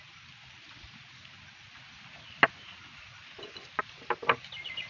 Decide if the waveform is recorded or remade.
recorded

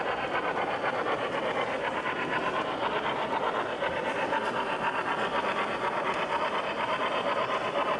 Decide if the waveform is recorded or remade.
remade